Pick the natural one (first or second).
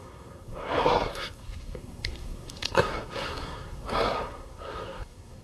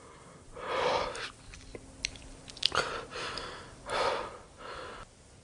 second